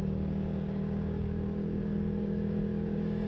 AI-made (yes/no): yes